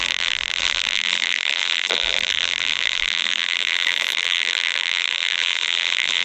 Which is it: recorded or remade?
remade